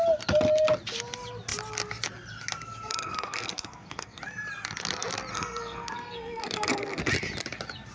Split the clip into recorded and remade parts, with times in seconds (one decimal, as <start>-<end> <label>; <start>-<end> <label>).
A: 0.0-2.9 recorded; 2.9-4.2 remade; 4.2-5.3 recorded; 5.3-7.1 remade; 7.1-7.9 recorded